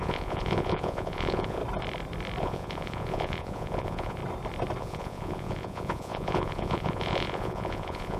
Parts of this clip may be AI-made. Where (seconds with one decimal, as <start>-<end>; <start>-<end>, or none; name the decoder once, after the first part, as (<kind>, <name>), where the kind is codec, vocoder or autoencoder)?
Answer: 0.0-1.6 (vocoder, Vocos); 2.4-4.2; 4.8-8.2